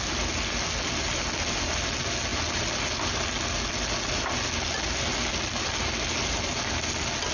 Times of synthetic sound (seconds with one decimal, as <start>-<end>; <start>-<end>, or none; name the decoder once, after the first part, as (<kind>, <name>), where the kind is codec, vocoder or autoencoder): none

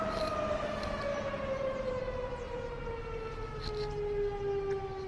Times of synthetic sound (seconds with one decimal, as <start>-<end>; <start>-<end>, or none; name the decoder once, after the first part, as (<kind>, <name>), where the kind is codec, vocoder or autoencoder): 1.1-2.0 (vocoder, BigVGAN v2)

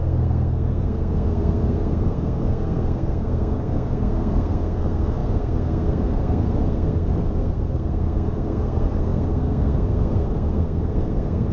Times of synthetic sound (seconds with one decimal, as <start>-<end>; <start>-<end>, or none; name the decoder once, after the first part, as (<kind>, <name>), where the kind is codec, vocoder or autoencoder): 0.0-11.5 (codec, SNAC)